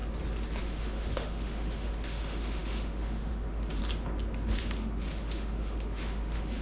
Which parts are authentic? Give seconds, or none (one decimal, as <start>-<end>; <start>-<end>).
0.0-0.6; 3.8-4.5